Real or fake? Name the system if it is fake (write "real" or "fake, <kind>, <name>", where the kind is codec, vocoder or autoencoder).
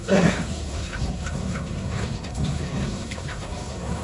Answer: fake, codec, SNAC